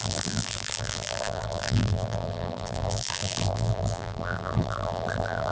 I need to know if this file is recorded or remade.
remade